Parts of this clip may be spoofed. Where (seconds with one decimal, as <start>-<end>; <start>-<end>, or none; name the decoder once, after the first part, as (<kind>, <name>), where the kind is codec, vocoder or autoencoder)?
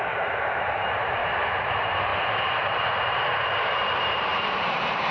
0.0-1.2 (vocoder, BigVGAN v2); 1.7-5.1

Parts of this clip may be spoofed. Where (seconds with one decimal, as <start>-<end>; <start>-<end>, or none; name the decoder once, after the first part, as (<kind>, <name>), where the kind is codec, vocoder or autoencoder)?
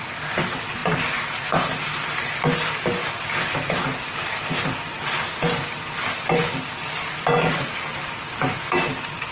none